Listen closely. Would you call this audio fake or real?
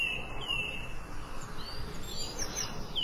real